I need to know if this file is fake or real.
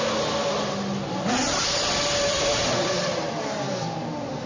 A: fake